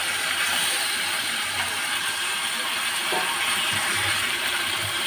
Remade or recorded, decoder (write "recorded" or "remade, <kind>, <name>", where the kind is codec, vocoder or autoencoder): remade, vocoder, BigVGAN v2